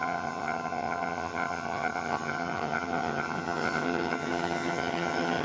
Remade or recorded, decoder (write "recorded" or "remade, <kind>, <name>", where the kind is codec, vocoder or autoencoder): remade, vocoder, HiFi-GAN